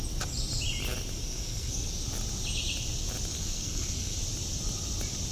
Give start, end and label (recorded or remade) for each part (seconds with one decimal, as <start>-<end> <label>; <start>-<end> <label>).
0.0-1.2 recorded; 1.2-1.9 remade; 1.9-3.3 recorded; 3.3-4.2 remade; 4.2-5.3 recorded